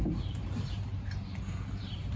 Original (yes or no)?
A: no